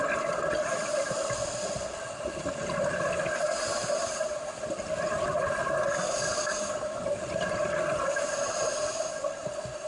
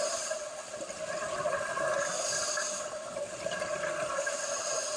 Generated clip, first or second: first